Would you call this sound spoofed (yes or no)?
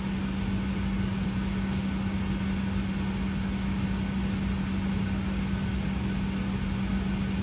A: no